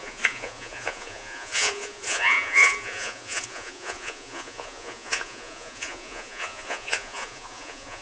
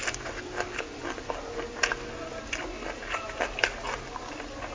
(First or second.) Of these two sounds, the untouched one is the second